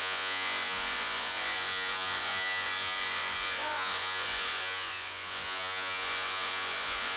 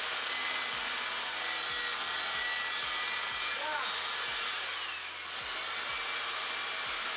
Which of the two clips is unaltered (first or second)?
second